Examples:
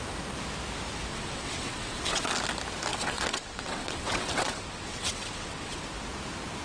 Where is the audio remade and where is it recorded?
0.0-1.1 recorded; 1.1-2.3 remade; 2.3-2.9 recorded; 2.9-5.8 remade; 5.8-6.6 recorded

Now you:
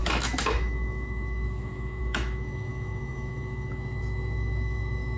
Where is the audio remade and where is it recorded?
0.0-5.2 remade

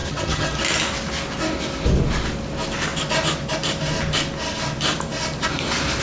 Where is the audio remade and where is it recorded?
0.0-0.6 remade; 0.6-6.0 recorded

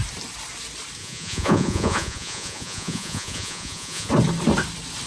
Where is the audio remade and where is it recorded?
0.0-1.0 recorded; 1.0-4.1 remade; 4.1-5.1 recorded

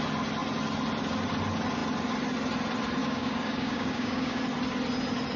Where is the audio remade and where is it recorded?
0.0-3.0 recorded; 3.0-4.4 remade; 4.4-5.4 recorded